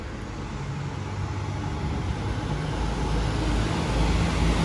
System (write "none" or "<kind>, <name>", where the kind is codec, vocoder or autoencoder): none